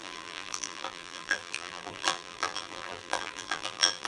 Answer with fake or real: fake